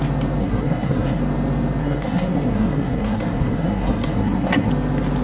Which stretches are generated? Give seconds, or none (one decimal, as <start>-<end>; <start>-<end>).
0.4-1.2; 1.8-4.7